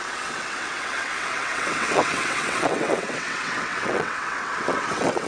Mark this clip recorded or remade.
remade